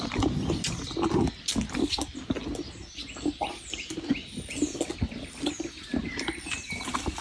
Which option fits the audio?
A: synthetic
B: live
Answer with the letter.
B